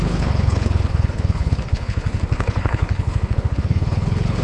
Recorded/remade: remade